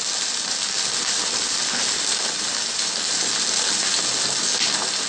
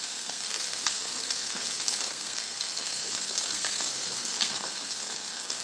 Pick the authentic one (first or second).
first